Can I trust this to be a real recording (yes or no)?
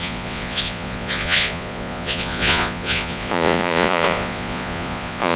no